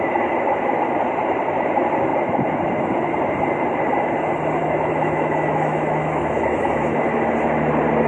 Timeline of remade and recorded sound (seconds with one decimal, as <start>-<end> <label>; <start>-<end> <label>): 0.0-4.6 recorded; 4.6-7.0 remade; 7.0-8.1 recorded